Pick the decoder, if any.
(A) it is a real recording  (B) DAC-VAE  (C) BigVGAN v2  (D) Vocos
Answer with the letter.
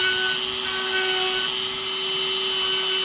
A